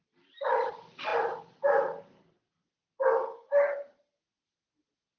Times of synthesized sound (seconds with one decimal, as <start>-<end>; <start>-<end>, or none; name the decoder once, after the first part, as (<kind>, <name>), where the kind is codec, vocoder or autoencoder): none